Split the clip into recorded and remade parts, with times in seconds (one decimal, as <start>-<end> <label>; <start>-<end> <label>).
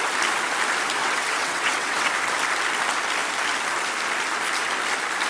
0.0-1.0 recorded; 1.0-2.1 remade; 2.1-5.3 recorded